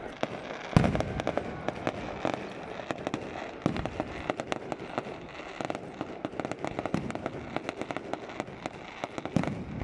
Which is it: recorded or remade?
recorded